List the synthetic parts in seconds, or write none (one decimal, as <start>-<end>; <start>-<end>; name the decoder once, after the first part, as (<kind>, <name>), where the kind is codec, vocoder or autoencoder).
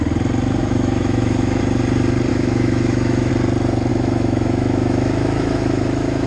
0.6-1.6 (autoencoder, DAC-VAE); 2.3-3.3; 3.9-6.3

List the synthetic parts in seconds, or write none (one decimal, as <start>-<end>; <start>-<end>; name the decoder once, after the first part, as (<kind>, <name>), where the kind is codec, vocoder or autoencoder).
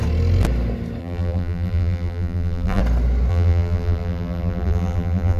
1.0-2.8 (vocoder, BigVGAN v2); 3.3-5.4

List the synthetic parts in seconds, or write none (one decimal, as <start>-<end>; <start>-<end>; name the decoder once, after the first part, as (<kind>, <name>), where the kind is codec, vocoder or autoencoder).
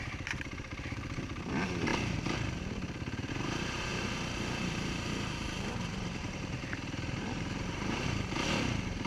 0.0-9.1 (vocoder, BigVGAN v2)